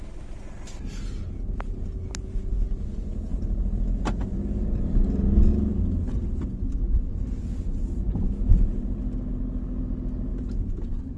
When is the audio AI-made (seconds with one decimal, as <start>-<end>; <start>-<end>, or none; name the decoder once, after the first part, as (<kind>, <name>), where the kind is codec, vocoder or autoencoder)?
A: none